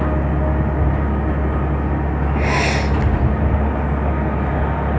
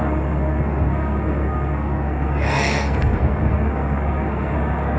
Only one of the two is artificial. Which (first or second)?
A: second